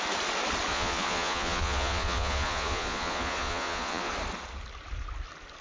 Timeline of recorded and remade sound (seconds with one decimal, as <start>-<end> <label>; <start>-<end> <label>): 0.0-0.7 recorded; 0.7-4.1 remade; 4.1-5.6 recorded